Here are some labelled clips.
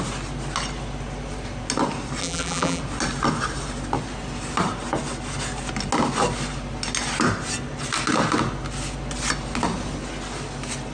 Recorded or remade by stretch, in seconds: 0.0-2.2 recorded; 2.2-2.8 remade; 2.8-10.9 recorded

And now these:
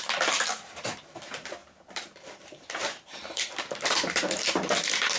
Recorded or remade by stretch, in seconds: 0.0-5.2 remade

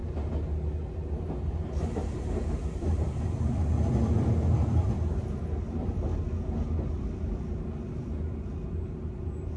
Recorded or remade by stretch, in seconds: 0.0-1.4 recorded; 1.4-6.1 remade; 6.1-7.1 recorded; 7.1-9.6 remade

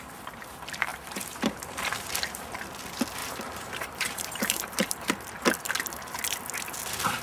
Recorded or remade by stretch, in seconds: 0.0-0.9 recorded; 0.9-1.8 remade; 1.8-3.2 recorded; 3.2-5.1 remade; 5.1-7.2 recorded

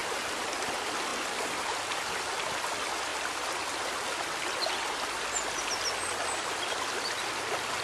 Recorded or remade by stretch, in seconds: 0.0-1.1 recorded; 1.1-2.5 remade; 2.5-3.1 recorded; 3.1-3.9 remade; 3.9-7.8 recorded